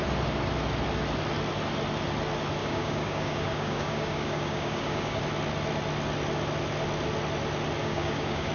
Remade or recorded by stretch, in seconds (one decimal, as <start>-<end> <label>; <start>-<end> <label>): 0.0-2.6 recorded; 2.6-5.2 remade; 5.2-7.8 recorded; 7.8-8.5 remade